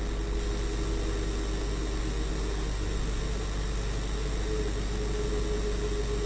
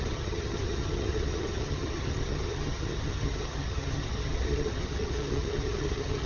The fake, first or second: second